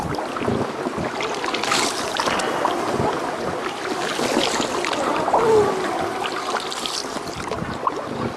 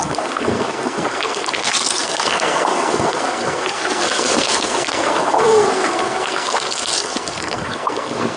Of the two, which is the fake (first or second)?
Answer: second